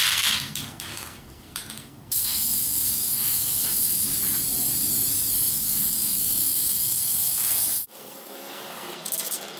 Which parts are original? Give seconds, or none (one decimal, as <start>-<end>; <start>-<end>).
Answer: 4.1-5.5